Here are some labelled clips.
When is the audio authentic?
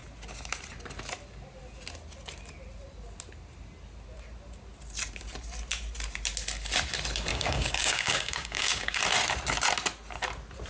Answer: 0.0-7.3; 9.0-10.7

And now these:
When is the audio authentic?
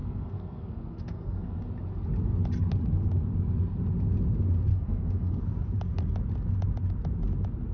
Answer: 1.7-4.7; 5.4-7.7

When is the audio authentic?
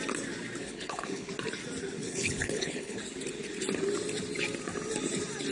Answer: 0.0-0.6; 1.3-2.0; 3.0-5.5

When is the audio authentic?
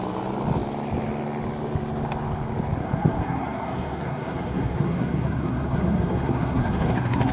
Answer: 0.0-2.8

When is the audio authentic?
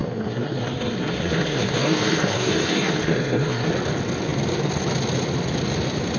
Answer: 3.7-6.2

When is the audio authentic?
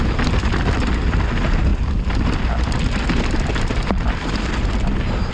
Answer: 0.0-5.3